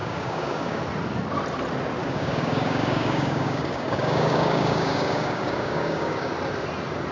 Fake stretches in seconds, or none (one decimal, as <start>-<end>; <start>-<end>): 0.0-0.8; 2.0-6.3

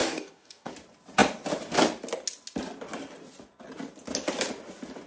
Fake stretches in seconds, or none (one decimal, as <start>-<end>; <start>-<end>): 0.0-0.7